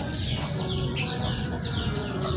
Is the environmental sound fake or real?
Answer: fake